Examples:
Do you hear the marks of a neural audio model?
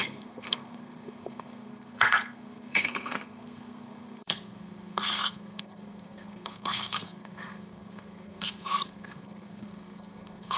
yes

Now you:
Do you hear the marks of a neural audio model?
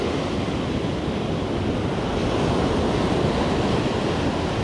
no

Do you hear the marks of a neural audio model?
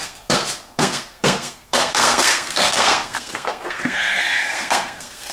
yes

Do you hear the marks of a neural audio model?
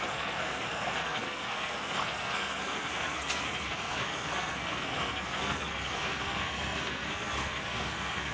yes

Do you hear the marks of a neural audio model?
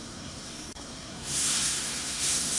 yes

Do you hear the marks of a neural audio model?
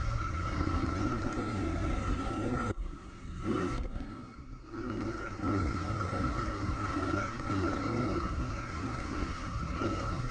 yes